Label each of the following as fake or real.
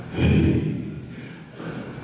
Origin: real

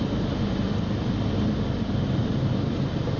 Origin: real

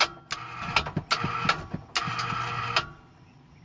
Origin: real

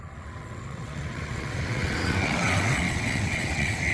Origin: fake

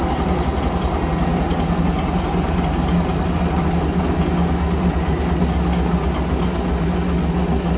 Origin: real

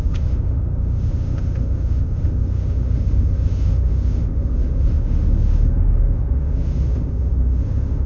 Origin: fake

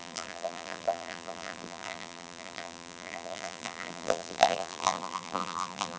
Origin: fake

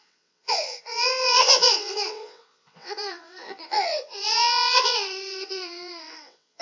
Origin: fake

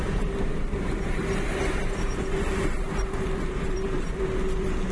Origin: fake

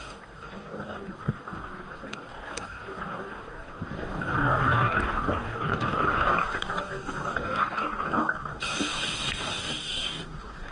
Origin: fake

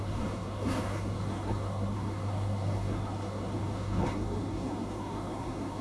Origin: fake